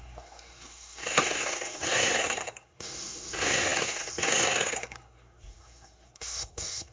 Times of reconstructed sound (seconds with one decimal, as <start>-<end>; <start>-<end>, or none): 0.0-6.9